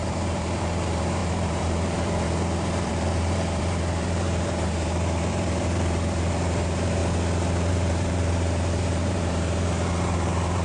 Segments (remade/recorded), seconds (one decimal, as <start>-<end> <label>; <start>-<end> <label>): 0.0-7.0 remade; 7.0-7.7 recorded; 7.7-10.6 remade